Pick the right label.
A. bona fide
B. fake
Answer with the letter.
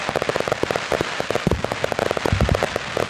A